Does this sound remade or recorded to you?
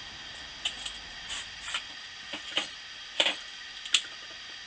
recorded